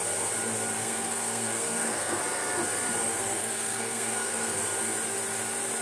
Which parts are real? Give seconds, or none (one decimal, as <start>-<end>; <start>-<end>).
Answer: 0.0-0.8; 2.2-3.1; 4.6-5.8